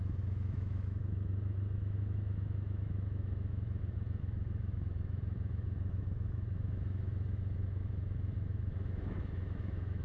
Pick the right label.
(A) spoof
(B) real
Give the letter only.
A